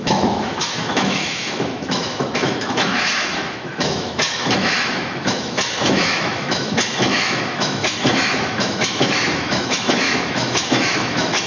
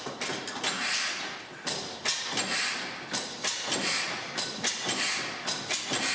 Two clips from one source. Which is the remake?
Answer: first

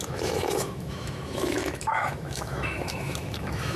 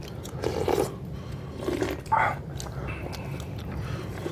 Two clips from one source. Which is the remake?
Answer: first